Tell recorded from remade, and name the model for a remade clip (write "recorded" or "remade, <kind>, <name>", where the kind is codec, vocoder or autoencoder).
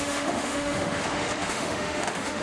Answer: remade, autoencoder, DAC-VAE